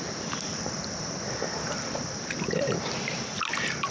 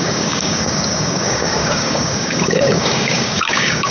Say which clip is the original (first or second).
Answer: first